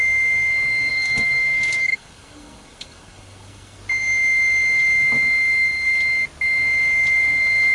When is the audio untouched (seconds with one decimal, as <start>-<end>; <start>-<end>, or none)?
0.0-0.9; 3.8-7.7